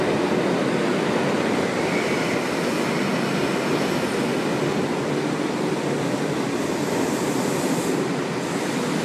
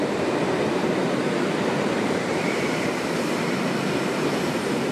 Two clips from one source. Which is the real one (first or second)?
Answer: first